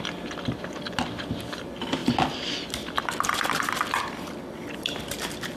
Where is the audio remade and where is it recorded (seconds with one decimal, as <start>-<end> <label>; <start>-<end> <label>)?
0.0-5.6 remade